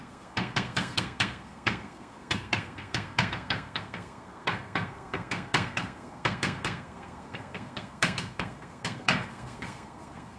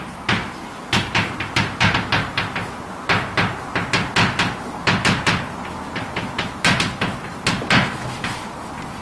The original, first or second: second